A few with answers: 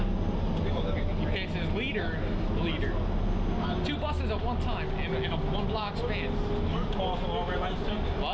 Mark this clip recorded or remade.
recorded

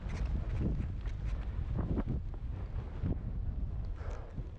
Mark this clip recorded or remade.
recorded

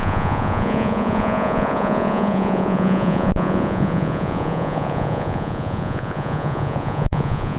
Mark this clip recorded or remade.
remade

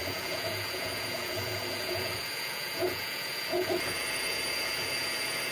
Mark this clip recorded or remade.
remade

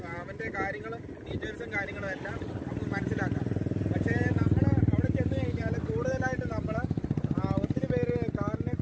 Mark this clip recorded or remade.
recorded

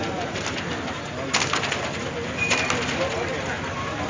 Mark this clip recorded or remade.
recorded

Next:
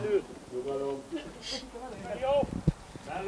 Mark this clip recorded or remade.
recorded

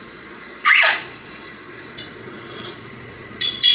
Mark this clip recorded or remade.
remade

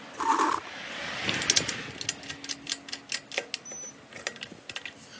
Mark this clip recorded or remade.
recorded